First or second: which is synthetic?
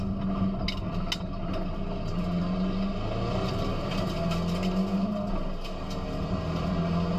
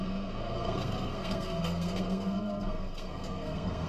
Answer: second